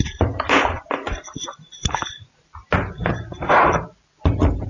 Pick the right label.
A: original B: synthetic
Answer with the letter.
A